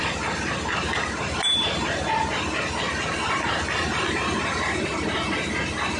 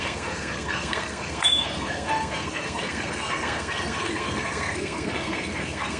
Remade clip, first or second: second